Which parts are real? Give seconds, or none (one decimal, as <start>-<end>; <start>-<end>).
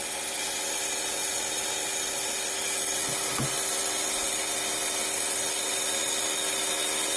0.0-7.2